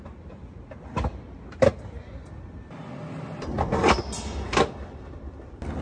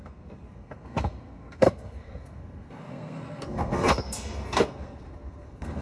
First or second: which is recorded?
first